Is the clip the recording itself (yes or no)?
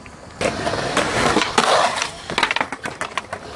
yes